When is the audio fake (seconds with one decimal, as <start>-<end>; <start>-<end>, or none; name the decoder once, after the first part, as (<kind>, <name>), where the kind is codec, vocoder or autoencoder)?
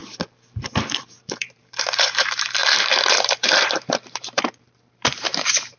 1.2-5.8 (vocoder, BigVGAN v2)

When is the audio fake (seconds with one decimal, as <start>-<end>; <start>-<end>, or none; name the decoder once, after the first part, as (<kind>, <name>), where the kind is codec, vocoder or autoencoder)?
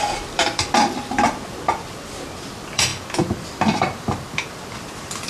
0.0-2.9 (vocoder, BigVGAN v2); 4.7-5.3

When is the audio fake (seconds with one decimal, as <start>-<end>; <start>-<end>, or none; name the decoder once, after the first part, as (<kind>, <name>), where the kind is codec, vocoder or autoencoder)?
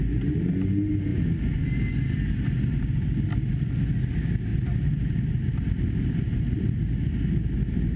4.5-6.6 (vocoder, BigVGAN v2)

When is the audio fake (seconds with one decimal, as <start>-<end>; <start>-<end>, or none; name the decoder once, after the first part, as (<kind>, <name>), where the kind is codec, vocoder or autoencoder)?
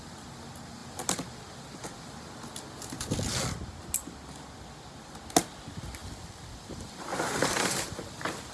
6.0-8.5 (vocoder, BigVGAN v2)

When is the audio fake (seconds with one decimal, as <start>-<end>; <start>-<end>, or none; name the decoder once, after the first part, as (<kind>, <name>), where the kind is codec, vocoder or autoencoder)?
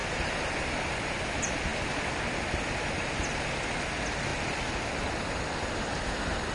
0.0-0.9 (vocoder, BigVGAN v2); 4.3-5.0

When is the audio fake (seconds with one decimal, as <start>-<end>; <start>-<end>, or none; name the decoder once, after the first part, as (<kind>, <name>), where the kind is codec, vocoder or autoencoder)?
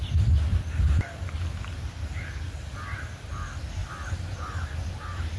0.5-3.2 (vocoder, BigVGAN v2); 3.8-4.5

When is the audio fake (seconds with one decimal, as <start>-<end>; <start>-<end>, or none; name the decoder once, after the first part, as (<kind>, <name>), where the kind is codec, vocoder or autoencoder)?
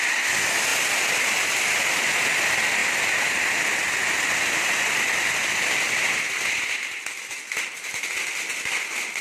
none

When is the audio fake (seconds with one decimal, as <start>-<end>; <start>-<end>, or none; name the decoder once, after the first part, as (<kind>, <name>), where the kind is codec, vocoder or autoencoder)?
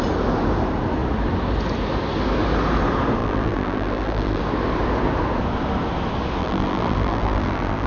3.2-4.4 (vocoder, BigVGAN v2); 6.4-7.9